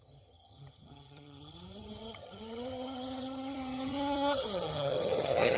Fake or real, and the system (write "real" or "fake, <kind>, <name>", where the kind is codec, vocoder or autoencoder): fake, vocoder, HiFi-GAN